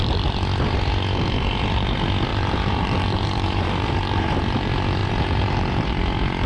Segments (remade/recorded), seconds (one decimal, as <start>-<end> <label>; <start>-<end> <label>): 0.0-2.3 recorded; 2.3-4.4 remade; 4.4-5.0 recorded; 5.0-5.9 remade; 5.9-6.5 recorded